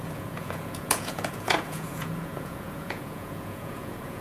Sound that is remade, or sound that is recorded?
remade